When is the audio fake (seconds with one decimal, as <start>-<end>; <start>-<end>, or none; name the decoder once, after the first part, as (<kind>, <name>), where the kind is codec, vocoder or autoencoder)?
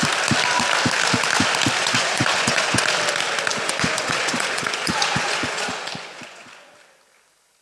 1.8-2.8 (vocoder, Vocos); 3.5-6.7